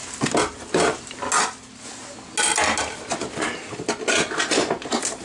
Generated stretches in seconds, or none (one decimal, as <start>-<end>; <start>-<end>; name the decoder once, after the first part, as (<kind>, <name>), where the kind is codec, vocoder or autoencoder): none